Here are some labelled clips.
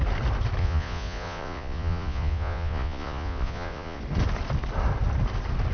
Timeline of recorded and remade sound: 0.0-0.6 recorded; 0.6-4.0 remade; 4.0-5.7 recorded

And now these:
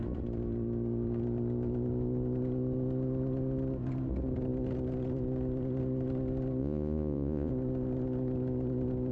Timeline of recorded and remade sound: 0.0-6.6 recorded; 6.6-7.5 remade; 7.5-9.1 recorded

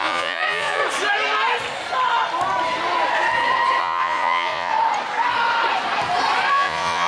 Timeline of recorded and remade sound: 0.0-0.8 remade; 0.8-3.8 recorded; 3.8-4.7 remade; 4.7-6.5 recorded; 6.5-7.1 remade

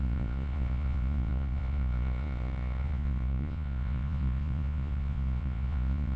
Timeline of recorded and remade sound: 0.0-6.2 remade

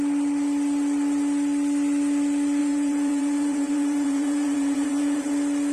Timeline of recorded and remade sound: 0.0-2.6 recorded; 2.6-5.3 remade; 5.3-5.7 recorded

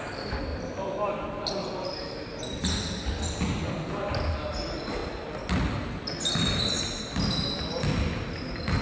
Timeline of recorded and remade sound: 0.0-8.8 recorded

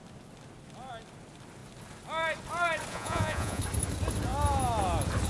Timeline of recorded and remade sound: 0.0-2.9 recorded; 2.9-3.6 remade; 3.6-5.3 recorded

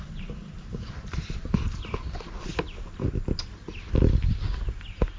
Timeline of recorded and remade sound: 0.0-5.2 recorded